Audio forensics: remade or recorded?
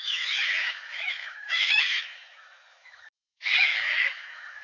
remade